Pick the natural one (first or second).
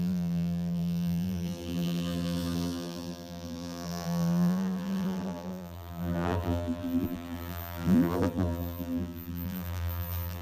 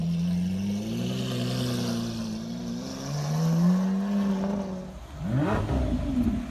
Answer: second